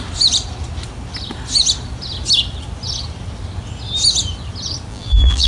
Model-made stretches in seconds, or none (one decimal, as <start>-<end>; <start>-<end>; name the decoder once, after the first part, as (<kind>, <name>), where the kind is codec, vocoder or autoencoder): 4.9-5.5 (vocoder, BigVGAN v2)